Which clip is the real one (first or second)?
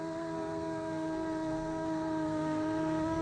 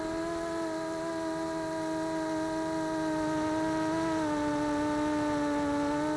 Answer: second